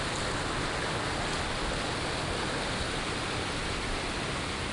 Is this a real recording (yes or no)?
yes